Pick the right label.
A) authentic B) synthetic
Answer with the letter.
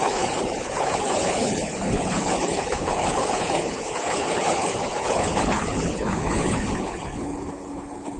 B